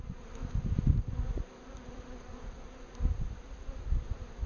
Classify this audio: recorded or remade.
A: recorded